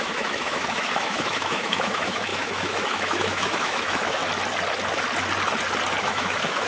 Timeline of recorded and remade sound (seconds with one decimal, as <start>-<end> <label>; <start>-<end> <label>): 0.0-4.2 remade; 4.2-6.0 recorded; 6.0-6.7 remade